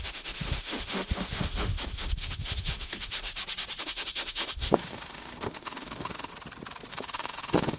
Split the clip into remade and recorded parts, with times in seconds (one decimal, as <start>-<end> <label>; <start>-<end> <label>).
0.0-3.3 remade; 3.3-3.8 recorded; 3.8-6.3 remade; 6.3-6.9 recorded; 6.9-7.8 remade